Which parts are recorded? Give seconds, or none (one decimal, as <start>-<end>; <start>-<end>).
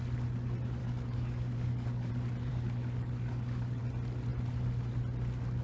0.0-0.8; 2.1-2.5; 3.8-5.6